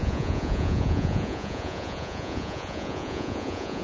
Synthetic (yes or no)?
yes